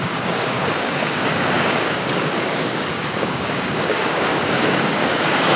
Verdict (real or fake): fake